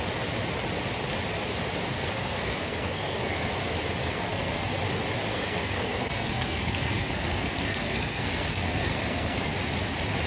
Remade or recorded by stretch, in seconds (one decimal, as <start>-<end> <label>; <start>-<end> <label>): 0.0-1.9 recorded; 1.9-3.5 remade; 3.5-4.0 recorded; 4.0-4.8 remade; 4.8-5.3 recorded; 5.3-9.5 remade; 9.5-10.3 recorded

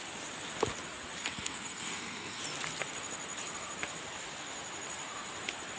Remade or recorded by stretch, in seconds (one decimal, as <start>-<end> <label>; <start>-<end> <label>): 0.0-1.2 recorded; 1.2-2.4 remade; 2.4-5.8 recorded

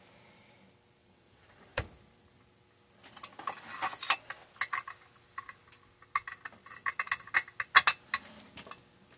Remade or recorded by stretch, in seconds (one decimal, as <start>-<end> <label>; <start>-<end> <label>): 0.0-1.0 recorded; 1.0-1.8 remade; 1.8-9.2 recorded

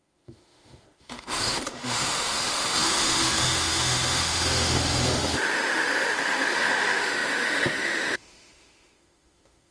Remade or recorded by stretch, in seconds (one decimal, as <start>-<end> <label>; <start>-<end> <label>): 0.0-9.7 remade

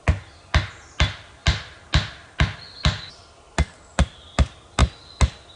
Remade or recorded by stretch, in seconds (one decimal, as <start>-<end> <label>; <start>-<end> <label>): 0.0-5.6 recorded